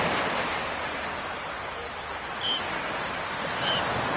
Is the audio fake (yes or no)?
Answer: no